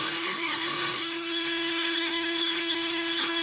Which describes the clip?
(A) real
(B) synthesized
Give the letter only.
B